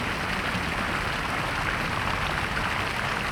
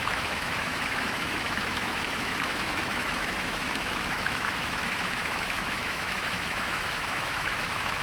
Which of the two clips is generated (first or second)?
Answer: second